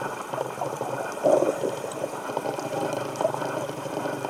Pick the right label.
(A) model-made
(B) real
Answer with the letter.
A